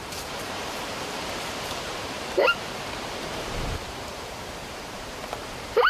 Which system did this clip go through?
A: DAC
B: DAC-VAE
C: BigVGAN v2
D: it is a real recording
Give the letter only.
C